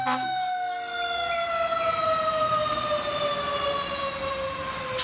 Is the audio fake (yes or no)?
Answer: no